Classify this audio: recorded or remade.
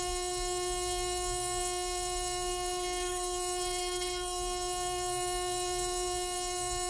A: remade